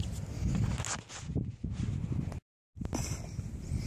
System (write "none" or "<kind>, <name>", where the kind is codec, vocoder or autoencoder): none